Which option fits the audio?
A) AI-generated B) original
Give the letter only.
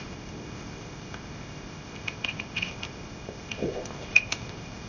A